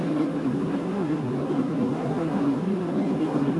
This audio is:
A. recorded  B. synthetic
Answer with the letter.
B